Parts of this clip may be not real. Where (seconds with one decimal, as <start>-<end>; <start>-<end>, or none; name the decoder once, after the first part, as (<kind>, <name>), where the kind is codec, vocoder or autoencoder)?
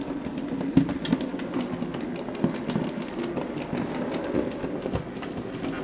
none